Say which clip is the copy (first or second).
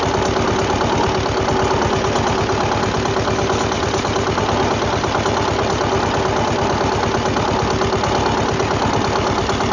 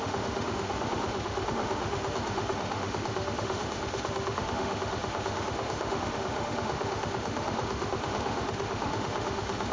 second